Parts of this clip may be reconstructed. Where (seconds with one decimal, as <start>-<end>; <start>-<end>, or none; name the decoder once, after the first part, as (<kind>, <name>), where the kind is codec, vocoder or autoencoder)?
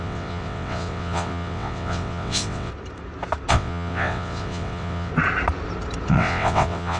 0.0-2.7 (vocoder, WaveNeXt); 3.5-5.1; 6.1-7.0